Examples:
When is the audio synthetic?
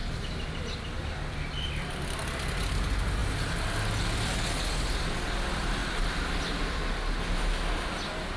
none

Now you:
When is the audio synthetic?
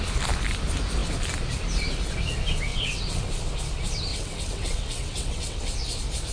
2.7-3.3 (vocoder, WaveNeXt); 4.1-5.7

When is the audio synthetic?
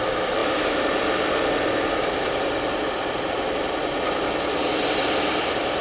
none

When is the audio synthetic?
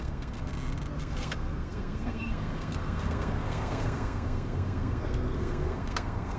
0.0-0.5 (codec, SNAC); 1.0-6.4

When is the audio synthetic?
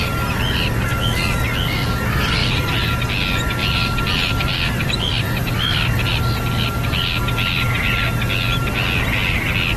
2.4-3.0 (vocoder, BigVGAN v2); 3.6-6.1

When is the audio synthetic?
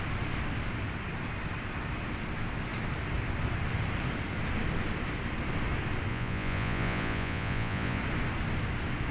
6.1-8.0 (vocoder, Vocos)